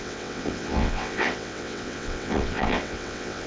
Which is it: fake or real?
fake